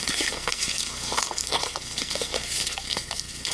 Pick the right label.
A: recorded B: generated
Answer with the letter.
B